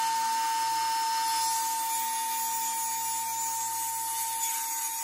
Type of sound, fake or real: real